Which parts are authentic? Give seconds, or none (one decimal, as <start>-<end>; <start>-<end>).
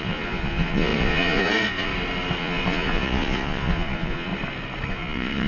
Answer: 1.9-2.4; 4.3-4.9